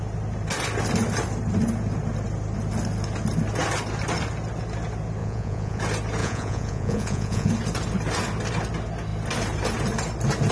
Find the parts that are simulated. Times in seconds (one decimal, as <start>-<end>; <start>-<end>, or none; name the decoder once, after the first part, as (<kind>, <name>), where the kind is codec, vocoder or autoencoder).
5.2-5.8 (vocoder, Vocos); 6.2-7.5